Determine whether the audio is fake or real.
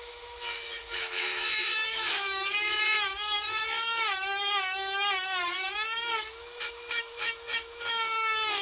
fake